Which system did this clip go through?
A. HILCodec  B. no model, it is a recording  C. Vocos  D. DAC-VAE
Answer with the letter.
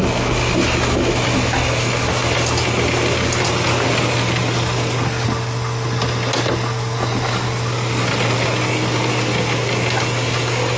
B